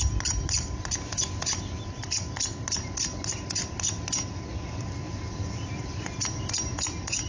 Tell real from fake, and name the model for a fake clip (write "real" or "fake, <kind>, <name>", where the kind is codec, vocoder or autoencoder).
real